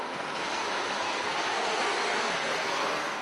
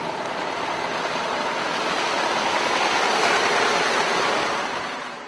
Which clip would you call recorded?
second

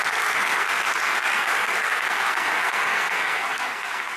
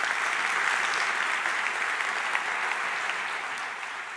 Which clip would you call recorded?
second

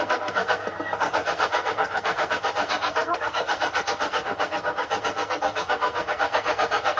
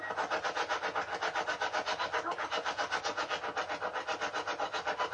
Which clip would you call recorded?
second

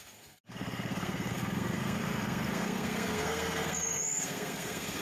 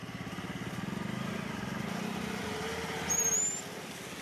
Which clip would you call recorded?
second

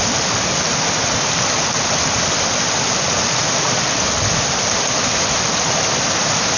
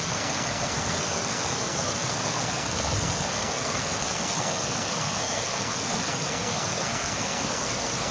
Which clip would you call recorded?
first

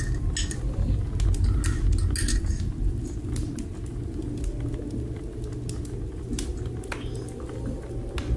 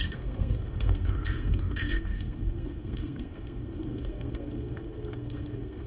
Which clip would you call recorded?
first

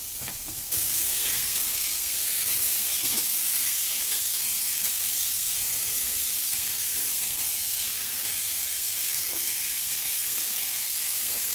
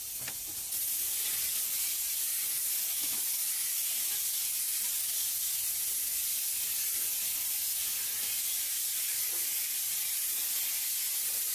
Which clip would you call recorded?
second